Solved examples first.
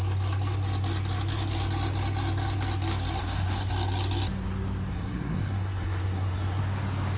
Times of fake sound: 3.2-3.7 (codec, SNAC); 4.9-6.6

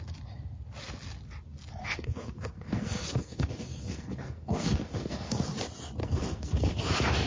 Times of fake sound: 1.8-5.4 (codec, SNAC); 6.0-6.8

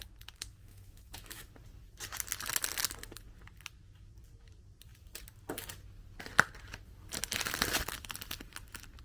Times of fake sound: 0.7-1.5 (autoencoder, DAC-VAE)

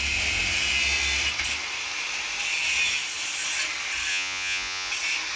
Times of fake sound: 4.1-4.9 (vocoder, Vocos)

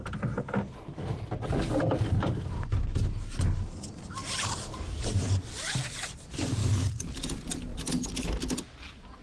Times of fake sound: none

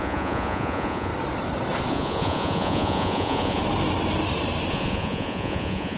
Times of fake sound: 0.0-1.1 (vocoder, Vocos); 1.9-3.6; 4.7-6.0

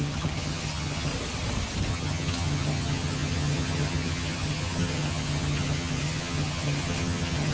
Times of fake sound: 0.0-1.1 (vocoder, HiFi-GAN); 1.9-7.5